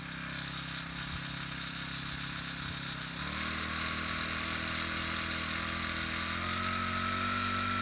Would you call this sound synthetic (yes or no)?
no